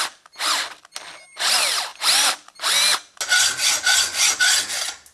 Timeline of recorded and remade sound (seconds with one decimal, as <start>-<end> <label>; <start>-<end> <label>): 0.0-5.1 recorded